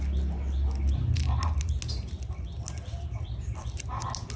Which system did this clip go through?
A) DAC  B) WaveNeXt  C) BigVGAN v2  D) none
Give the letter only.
D